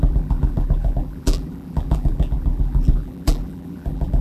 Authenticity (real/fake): fake